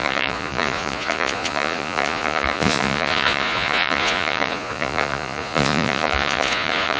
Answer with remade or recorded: remade